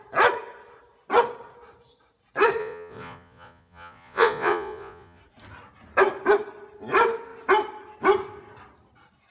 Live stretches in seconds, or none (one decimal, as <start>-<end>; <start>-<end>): 0.0-2.6; 5.2-9.3